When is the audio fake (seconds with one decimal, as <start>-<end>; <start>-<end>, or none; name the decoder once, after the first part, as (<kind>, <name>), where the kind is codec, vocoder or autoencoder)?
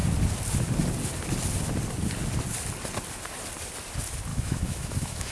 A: 4.3-5.3 (autoencoder, DAC-VAE)